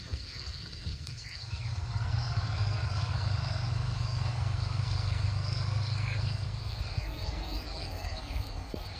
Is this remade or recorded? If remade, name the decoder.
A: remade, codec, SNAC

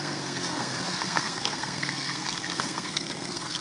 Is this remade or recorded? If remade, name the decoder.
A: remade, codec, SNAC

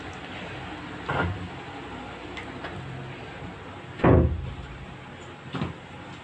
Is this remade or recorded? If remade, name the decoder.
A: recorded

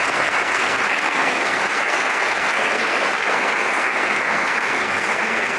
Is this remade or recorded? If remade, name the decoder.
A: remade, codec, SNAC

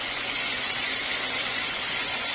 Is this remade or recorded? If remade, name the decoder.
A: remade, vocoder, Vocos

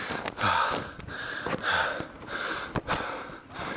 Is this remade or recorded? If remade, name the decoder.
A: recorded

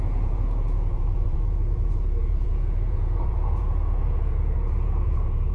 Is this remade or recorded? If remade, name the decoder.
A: remade, vocoder, Vocos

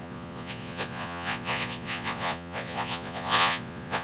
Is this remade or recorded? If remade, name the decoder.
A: remade, vocoder, Vocos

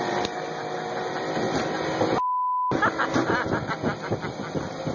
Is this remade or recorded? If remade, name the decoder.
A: recorded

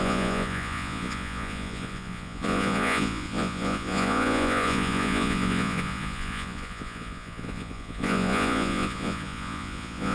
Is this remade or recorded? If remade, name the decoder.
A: remade, vocoder, Vocos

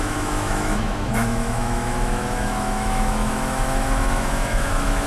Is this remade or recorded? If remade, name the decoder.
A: remade, autoencoder, DAC-VAE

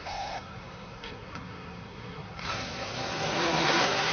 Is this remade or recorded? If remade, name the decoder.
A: remade, codec, SNAC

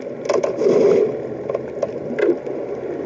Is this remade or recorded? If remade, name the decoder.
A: recorded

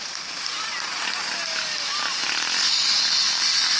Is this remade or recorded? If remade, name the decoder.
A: recorded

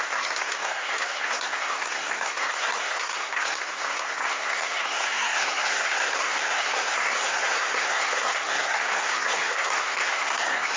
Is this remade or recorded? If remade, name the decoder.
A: remade, codec, SNAC